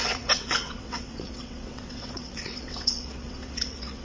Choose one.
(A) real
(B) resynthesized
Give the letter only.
B